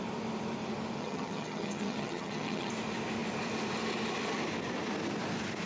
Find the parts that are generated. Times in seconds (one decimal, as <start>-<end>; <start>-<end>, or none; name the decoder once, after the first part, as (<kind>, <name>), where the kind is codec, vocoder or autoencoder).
1.0-2.7 (vocoder, HiFi-GAN)